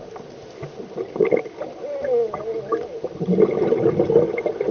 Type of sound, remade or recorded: recorded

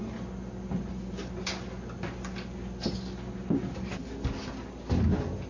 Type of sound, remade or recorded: recorded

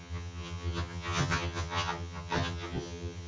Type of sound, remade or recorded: remade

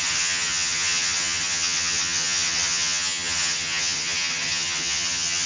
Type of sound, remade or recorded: remade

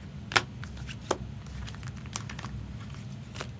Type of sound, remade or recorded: recorded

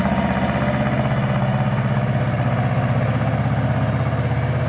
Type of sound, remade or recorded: recorded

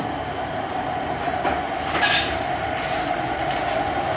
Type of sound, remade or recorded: recorded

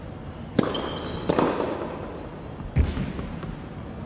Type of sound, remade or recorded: recorded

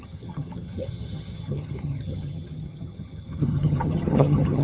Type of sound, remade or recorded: remade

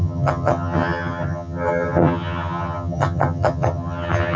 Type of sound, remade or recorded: remade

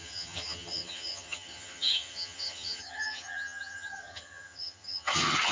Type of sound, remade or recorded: remade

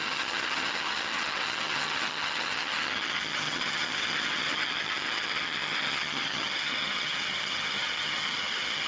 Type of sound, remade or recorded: remade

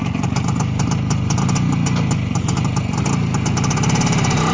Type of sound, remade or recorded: recorded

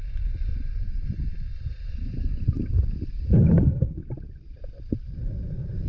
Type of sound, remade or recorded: recorded